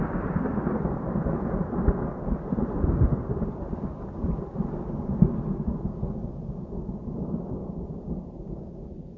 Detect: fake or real real